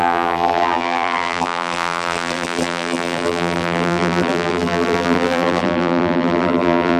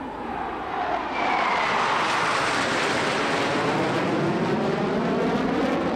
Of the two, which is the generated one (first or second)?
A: first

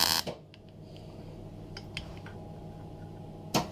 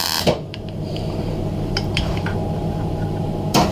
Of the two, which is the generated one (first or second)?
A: second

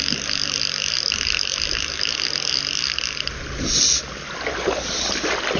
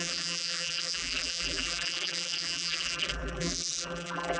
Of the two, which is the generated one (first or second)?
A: second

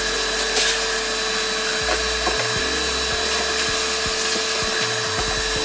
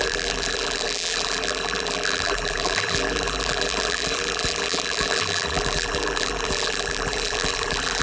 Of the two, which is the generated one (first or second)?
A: second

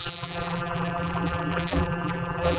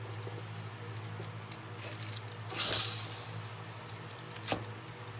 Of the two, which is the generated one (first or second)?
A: first